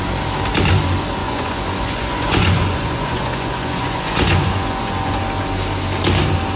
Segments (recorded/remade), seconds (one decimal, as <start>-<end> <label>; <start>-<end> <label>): 0.0-1.2 recorded; 1.2-5.2 remade; 5.2-6.6 recorded